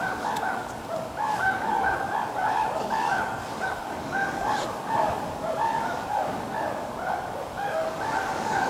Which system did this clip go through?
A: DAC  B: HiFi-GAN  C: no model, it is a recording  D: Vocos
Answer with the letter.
A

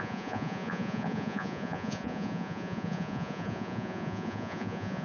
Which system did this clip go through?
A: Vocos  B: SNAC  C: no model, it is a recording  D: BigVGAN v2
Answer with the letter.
A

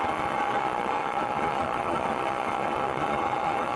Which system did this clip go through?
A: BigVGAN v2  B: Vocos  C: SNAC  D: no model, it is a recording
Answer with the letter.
B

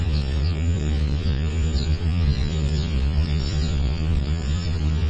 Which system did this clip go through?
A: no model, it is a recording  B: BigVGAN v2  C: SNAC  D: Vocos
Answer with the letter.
D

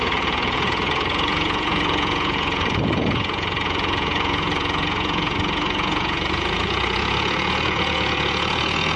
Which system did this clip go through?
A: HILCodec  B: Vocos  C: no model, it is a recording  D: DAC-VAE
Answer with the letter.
B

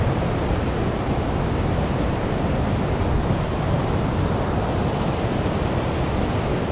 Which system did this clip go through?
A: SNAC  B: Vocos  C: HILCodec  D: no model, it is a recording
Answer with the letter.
D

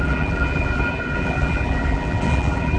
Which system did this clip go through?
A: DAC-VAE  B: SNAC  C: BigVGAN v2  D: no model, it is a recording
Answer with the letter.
C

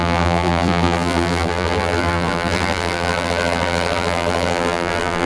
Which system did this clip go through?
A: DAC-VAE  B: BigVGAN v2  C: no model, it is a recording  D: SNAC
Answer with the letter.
B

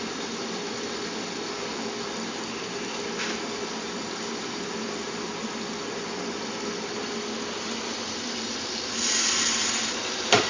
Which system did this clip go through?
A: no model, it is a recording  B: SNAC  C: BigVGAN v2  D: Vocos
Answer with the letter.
A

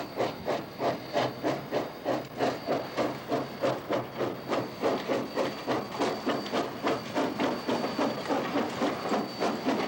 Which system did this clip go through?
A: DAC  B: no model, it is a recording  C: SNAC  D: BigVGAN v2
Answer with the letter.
B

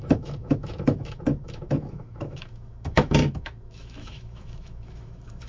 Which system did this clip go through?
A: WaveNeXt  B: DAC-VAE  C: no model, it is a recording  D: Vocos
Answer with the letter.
B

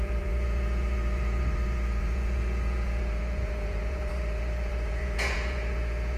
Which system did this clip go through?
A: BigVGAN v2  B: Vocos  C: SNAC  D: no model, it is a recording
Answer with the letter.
B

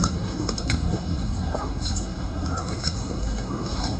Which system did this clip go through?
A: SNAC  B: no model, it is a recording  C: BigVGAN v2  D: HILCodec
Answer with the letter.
A